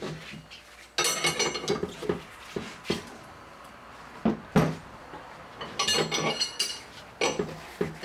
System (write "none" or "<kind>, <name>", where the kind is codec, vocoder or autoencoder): none